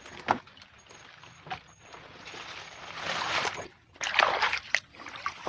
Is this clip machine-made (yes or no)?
no